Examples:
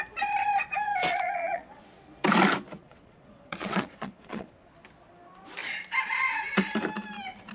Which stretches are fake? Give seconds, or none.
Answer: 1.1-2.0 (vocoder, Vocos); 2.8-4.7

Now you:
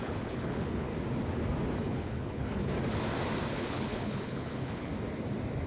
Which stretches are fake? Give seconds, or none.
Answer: 0.0-0.9 (codec, HILCodec); 1.8-2.6; 3.5-4.9